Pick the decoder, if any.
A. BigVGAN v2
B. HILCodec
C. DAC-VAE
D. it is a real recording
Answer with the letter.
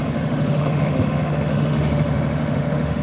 C